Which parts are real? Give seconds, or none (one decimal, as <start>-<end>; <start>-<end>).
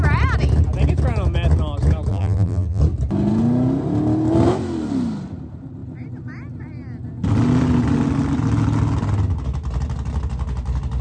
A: 0.0-2.1; 2.8-11.0